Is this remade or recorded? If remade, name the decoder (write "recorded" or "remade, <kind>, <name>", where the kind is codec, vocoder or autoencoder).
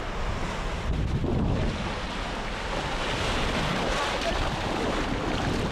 recorded